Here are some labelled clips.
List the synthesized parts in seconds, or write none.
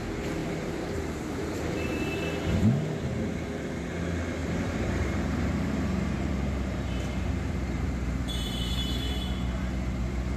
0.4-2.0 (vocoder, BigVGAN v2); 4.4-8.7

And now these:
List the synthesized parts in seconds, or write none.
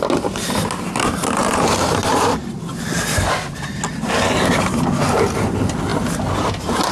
1.4-3.3 (vocoder, BigVGAN v2)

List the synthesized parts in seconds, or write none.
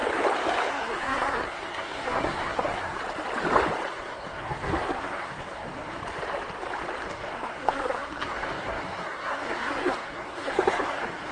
0.7-3.0 (codec, SNAC); 3.9-6.0; 7.1-11.3